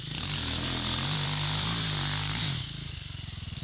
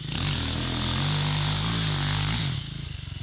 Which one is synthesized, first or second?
first